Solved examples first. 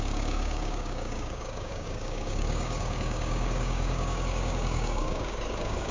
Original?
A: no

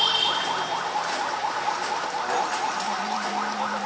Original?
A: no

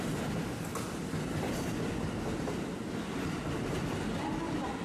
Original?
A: yes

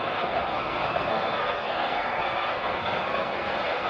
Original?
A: no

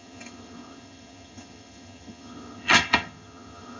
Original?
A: no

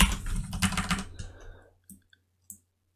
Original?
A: yes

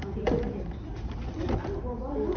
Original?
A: yes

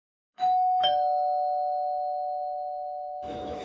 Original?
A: no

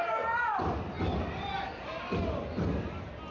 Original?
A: yes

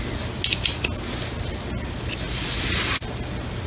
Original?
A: yes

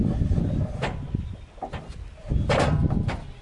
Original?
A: yes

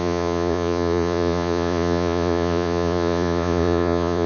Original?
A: no